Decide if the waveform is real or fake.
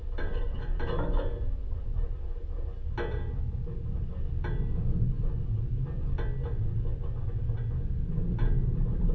real